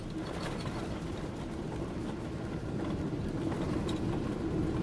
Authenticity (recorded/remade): recorded